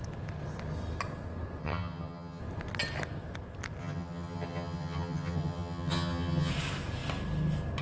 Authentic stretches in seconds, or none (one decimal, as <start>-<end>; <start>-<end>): 0.0-1.6; 2.4-3.8; 6.5-7.8